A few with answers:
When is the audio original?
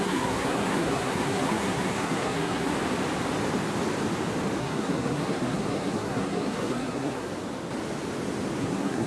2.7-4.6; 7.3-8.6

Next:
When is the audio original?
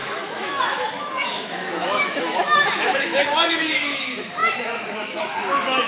none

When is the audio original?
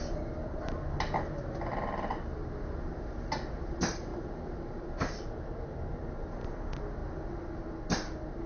0.0-8.5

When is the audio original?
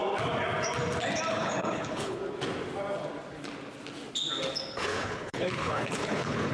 0.0-1.3; 2.2-4.7